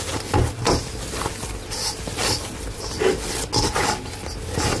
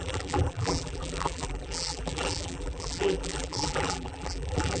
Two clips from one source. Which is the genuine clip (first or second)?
first